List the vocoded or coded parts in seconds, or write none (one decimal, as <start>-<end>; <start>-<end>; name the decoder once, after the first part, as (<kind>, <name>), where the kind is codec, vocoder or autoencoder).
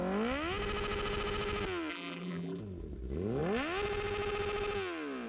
1.9-2.6 (vocoder, BigVGAN v2)